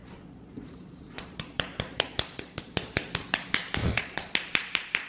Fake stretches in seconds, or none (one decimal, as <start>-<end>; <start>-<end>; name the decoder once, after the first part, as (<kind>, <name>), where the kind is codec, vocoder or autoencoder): 0.0-3.1 (vocoder, Vocos); 3.8-4.3